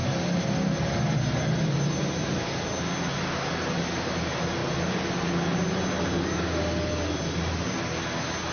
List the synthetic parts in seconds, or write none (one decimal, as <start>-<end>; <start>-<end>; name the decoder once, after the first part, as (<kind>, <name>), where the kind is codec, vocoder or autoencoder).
none